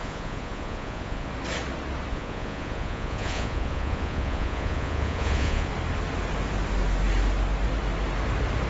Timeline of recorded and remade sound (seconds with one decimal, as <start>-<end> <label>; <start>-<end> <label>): 0.0-1.3 remade; 1.3-2.1 recorded; 2.1-5.7 remade; 5.7-8.7 recorded

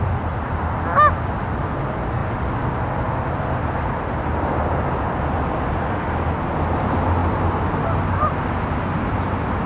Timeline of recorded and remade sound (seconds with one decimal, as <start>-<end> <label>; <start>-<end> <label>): 0.0-9.7 recorded

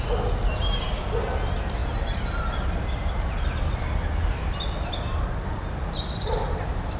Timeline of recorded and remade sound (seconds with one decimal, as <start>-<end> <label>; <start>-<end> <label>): 0.0-7.0 recorded

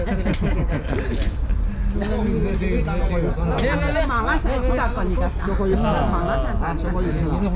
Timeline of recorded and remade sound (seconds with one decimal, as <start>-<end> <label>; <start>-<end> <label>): 0.0-7.6 recorded

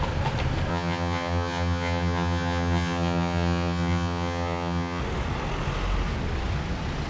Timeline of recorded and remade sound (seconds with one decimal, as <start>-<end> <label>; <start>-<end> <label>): 0.0-0.7 recorded; 0.7-5.0 remade; 5.0-7.1 recorded

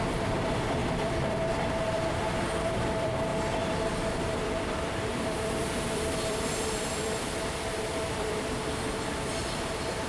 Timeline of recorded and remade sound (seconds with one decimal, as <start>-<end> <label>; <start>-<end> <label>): 0.0-10.1 remade

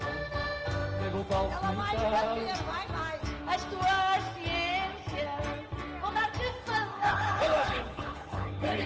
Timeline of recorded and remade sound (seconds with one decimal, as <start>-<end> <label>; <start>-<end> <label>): 0.0-6.9 recorded; 6.9-8.9 remade

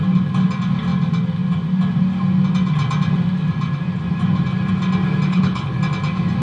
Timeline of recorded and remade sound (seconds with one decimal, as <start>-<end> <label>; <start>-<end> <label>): 0.0-5.3 recorded; 5.3-5.8 remade; 5.8-6.4 recorded